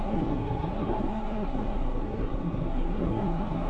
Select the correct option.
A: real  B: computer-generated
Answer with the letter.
B